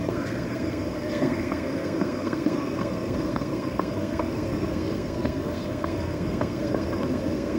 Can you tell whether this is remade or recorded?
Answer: remade